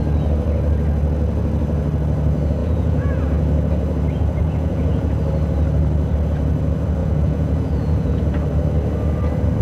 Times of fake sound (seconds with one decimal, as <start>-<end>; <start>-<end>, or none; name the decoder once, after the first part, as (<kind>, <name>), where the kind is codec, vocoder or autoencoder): 2.6-3.2 (vocoder, Vocos); 4.4-5.1; 7.0-8.2